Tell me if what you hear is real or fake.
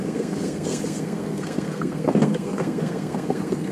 fake